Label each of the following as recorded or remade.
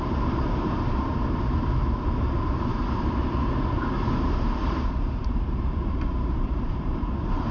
remade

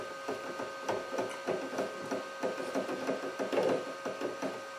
recorded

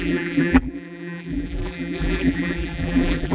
remade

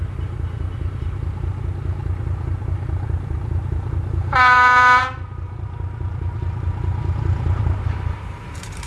remade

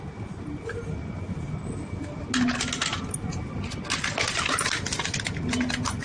recorded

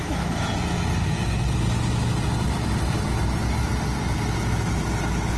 recorded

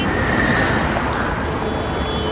recorded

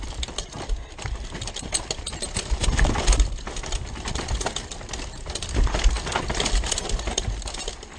remade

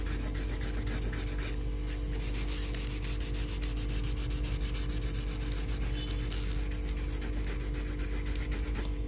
recorded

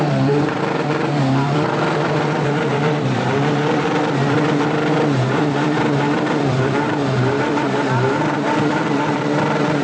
remade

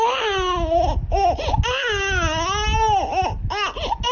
recorded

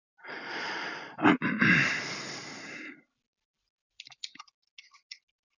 recorded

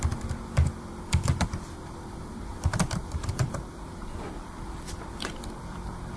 remade